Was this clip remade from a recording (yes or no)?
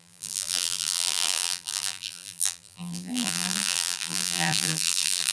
yes